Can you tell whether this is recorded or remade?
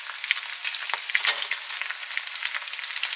recorded